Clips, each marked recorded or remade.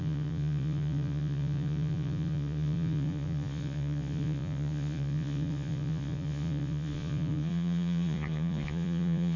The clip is remade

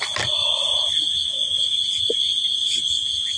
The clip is recorded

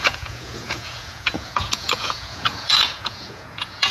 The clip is remade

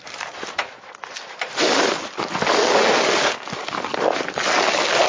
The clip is recorded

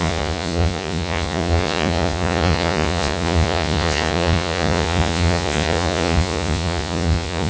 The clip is remade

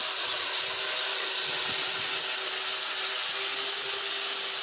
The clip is recorded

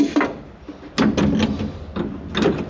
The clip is recorded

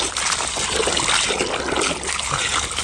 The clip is recorded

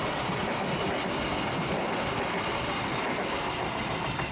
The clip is recorded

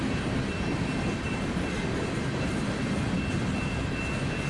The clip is recorded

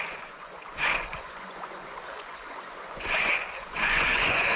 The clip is remade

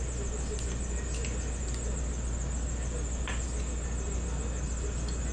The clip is recorded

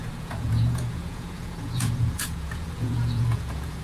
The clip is remade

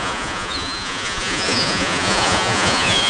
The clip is remade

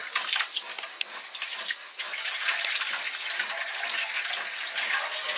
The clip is recorded